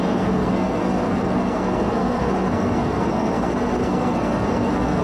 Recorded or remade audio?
remade